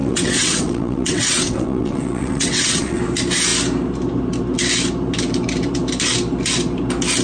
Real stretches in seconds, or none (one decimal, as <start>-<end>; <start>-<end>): 3.0-7.2